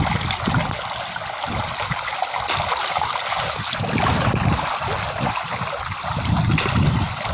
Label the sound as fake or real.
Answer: real